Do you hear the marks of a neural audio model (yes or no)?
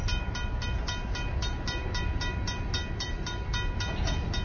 no